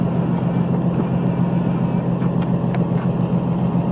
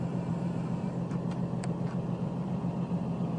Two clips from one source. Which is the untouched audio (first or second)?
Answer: first